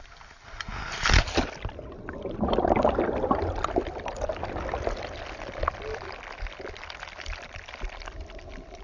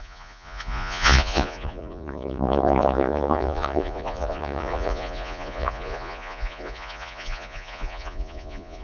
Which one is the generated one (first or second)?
second